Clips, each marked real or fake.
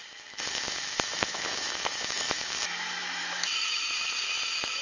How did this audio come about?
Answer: fake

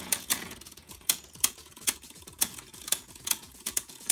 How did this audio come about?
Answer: fake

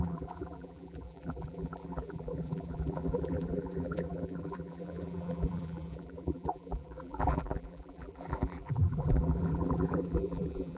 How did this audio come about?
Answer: fake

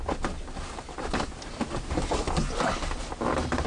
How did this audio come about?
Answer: real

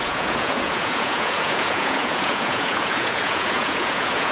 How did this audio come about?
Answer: fake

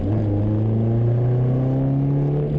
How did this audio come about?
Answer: real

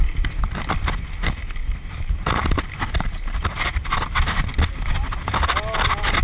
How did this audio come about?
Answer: real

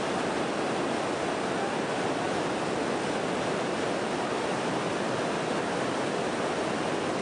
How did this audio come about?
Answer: real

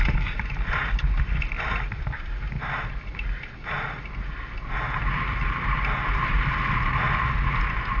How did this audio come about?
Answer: real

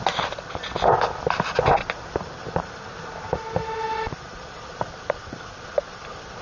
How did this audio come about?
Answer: real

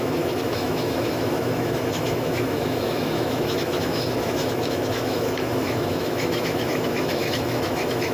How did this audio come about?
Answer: fake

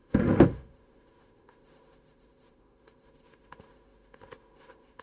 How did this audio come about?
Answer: fake